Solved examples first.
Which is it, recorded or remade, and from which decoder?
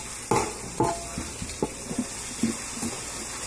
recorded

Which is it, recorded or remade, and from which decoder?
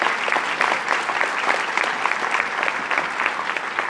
recorded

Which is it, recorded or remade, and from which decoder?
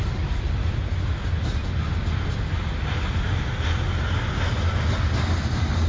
recorded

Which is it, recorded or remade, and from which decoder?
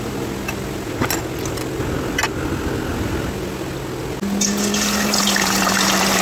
recorded